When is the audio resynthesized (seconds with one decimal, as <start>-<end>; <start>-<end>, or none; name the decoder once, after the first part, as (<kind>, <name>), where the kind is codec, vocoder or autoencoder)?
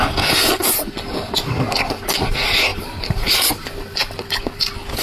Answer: 2.7-3.5 (vocoder, BigVGAN v2)